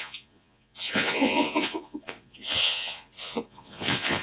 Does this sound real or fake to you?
fake